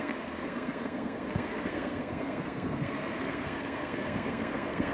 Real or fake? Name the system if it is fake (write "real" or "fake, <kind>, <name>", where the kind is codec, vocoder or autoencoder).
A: fake, codec, SNAC